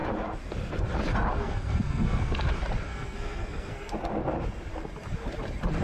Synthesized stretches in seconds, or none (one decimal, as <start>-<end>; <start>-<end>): 1.4-2.5; 2.9-4.1